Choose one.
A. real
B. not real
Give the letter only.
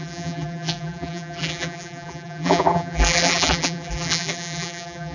B